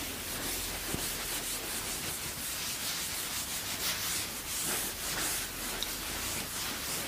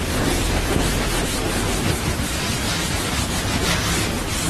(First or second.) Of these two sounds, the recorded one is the first